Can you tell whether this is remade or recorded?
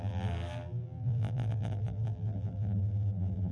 remade